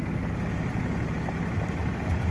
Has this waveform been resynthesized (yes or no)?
no